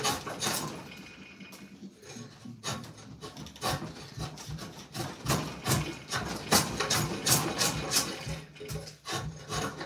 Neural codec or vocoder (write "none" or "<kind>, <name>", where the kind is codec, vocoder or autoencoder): none